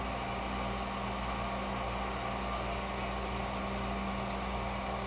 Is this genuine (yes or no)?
yes